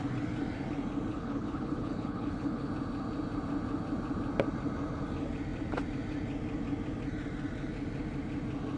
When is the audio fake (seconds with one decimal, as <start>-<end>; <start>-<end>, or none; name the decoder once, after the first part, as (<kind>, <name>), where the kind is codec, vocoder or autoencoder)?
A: 1.1-2.7 (codec, HILCodec)